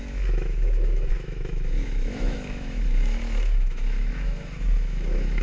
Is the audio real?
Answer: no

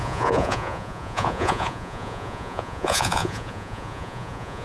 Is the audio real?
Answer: no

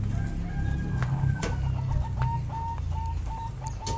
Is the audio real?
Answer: yes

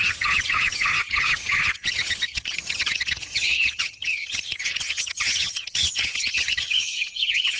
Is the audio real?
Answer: no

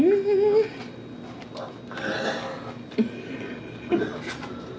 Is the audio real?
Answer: yes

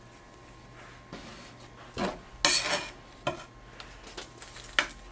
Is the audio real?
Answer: yes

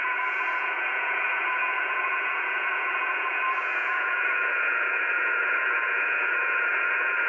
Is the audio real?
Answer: no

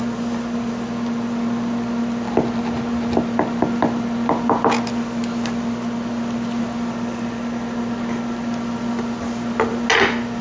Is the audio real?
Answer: yes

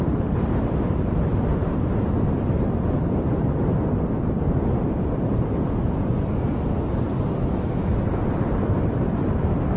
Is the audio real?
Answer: yes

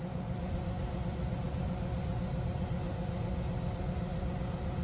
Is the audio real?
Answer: yes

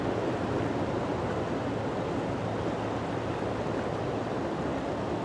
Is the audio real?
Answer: yes